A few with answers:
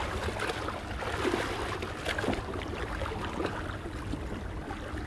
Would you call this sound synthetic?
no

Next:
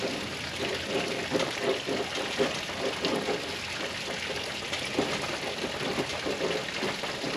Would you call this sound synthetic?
no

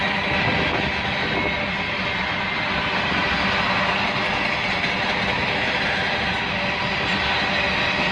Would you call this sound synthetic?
no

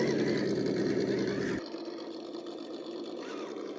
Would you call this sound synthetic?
no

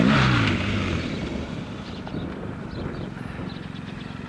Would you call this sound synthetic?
no